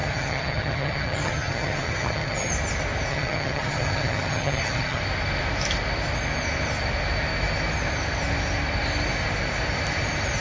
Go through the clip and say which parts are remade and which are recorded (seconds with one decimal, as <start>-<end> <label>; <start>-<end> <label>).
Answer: 0.0-2.5 remade; 2.5-3.1 recorded; 3.1-5.0 remade; 5.0-10.4 recorded